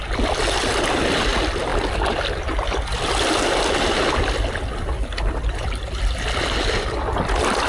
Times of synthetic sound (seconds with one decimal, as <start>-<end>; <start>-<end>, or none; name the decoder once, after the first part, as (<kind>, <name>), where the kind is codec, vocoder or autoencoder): none